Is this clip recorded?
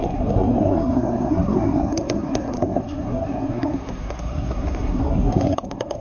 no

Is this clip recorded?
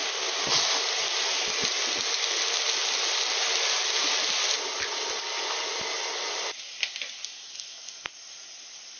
yes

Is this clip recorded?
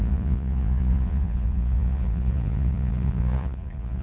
no